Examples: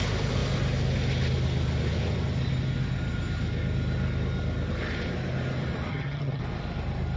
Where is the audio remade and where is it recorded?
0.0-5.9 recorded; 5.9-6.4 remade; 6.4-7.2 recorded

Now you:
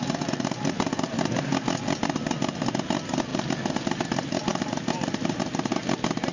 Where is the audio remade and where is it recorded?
0.0-6.3 recorded

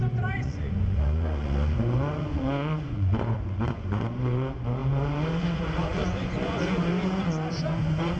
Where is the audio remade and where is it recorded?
0.0-8.2 remade

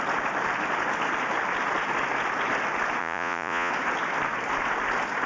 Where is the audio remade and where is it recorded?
0.0-3.0 recorded; 3.0-3.7 remade; 3.7-5.3 recorded

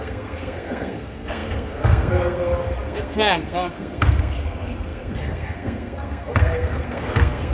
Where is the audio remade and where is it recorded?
0.0-7.5 remade

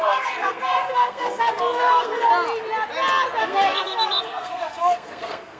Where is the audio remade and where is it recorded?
0.0-2.3 remade; 2.3-3.4 recorded; 3.4-5.6 remade